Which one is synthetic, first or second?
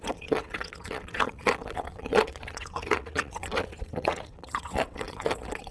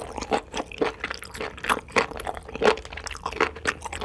first